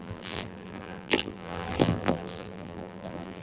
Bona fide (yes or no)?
no